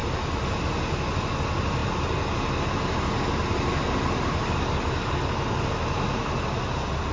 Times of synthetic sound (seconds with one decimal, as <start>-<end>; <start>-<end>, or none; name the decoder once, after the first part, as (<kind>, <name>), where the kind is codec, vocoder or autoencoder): none